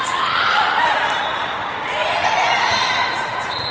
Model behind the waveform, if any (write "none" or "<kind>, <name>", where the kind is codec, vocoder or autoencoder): vocoder, Vocos